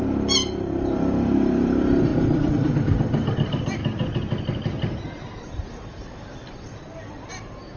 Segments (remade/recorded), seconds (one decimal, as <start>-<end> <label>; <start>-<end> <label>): 0.0-3.8 remade; 3.8-5.4 recorded; 5.4-7.8 remade

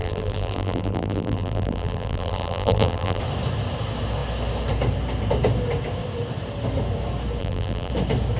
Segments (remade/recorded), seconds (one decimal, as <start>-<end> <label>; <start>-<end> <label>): 0.0-3.2 remade; 3.2-7.4 recorded; 7.4-7.9 remade; 7.9-8.4 recorded